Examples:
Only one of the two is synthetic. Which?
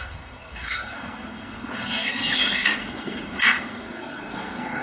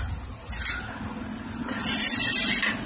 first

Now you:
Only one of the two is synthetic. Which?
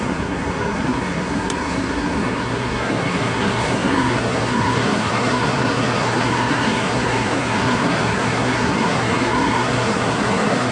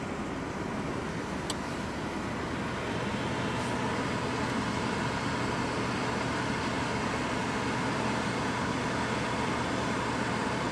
first